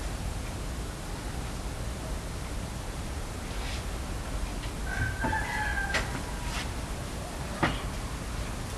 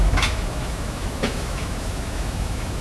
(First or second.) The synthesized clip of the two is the second